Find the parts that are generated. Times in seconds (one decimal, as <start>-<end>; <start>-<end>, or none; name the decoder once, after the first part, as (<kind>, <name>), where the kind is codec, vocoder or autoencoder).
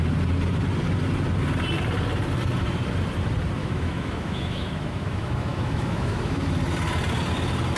3.6-6.5 (autoencoder, DAC-VAE)